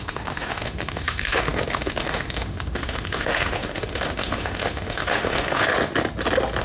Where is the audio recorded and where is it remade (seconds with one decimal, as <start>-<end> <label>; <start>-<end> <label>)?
0.0-5.7 remade; 5.7-6.6 recorded

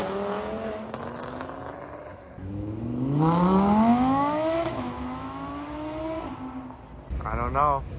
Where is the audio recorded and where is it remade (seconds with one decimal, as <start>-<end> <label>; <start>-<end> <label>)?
0.0-2.1 recorded; 2.1-6.0 remade; 6.0-8.0 recorded

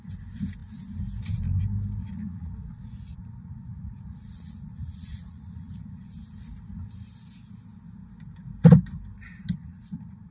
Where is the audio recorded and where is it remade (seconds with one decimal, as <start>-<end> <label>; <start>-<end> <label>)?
0.0-2.0 recorded; 2.0-6.1 remade; 6.1-9.6 recorded; 9.6-10.3 remade